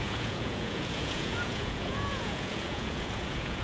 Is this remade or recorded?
remade